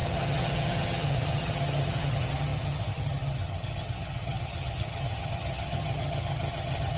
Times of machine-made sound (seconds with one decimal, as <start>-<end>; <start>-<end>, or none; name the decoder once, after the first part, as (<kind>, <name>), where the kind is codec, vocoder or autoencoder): 0.0-7.0 (vocoder, HiFi-GAN)